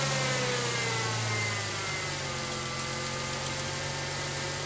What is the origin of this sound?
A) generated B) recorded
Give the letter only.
B